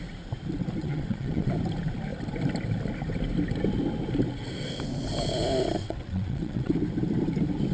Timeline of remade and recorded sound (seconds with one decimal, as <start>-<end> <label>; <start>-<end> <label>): 0.0-0.8 recorded; 0.8-1.5 remade; 1.5-5.8 recorded; 5.8-6.7 remade; 6.7-7.7 recorded